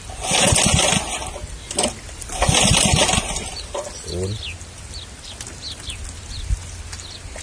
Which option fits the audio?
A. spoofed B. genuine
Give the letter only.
B